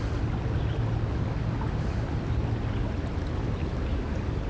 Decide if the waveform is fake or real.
real